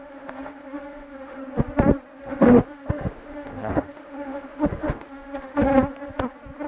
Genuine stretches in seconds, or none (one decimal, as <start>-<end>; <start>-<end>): 1.4-2.2; 5.7-6.7